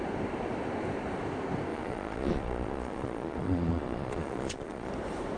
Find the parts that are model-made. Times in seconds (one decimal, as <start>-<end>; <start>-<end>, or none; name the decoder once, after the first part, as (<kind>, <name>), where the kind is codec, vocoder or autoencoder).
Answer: 1.7-4.9 (vocoder, Vocos)